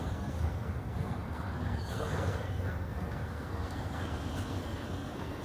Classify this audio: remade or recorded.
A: remade